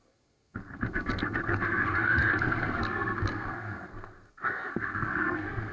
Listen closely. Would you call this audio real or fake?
fake